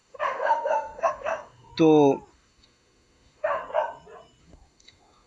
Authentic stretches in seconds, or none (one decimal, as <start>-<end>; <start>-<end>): 1.7-2.3; 3.6-4.4